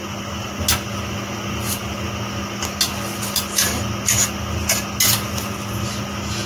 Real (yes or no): yes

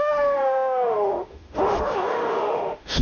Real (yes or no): no